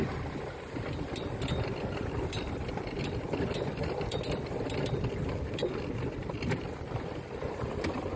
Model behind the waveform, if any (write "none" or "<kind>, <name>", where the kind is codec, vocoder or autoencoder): vocoder, BigVGAN v2